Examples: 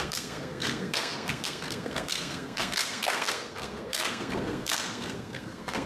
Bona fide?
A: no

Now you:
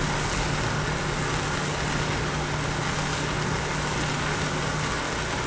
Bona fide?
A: yes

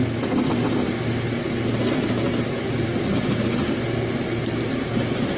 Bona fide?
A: yes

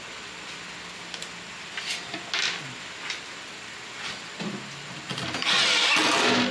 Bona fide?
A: yes